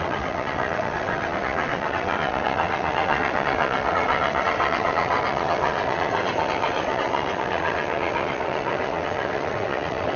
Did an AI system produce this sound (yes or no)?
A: yes